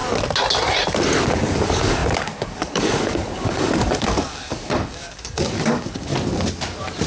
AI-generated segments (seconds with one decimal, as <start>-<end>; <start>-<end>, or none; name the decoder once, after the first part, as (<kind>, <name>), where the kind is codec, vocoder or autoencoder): 1.5-6.1 (codec, DAC)